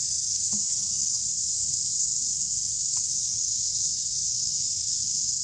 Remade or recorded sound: remade